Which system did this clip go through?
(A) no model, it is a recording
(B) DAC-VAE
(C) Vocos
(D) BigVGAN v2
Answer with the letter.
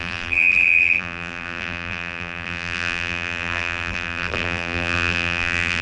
D